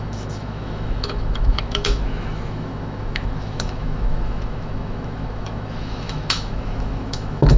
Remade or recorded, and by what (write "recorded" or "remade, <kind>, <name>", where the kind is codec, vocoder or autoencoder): remade, autoencoder, DAC-VAE